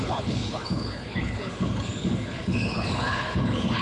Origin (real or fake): fake